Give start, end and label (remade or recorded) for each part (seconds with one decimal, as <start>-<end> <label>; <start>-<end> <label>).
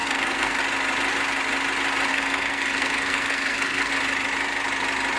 0.0-0.6 remade; 0.6-2.1 recorded; 2.1-3.9 remade; 3.9-5.2 recorded